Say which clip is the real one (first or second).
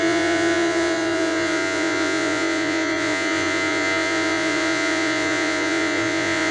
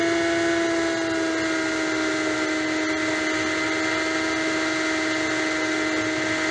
second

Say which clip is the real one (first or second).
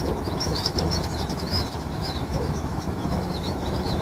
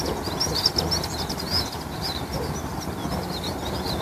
second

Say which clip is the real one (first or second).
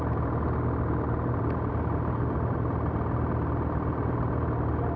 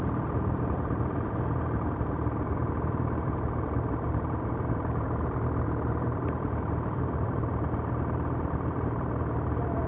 first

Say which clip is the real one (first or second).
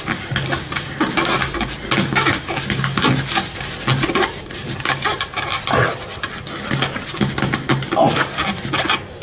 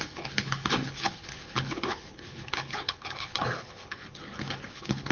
first